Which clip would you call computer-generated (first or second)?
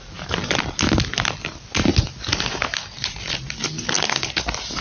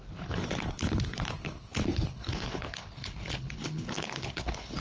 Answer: second